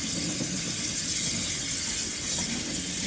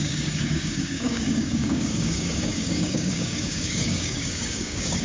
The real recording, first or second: first